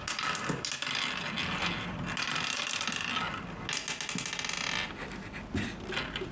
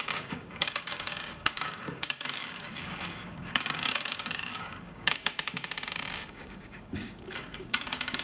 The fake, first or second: second